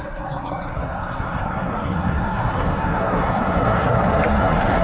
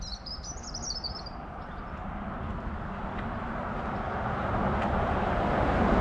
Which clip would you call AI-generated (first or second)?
first